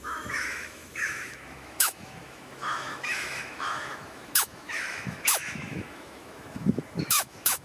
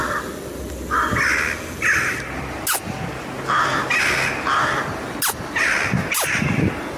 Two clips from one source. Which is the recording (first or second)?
second